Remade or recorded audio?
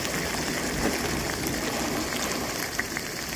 recorded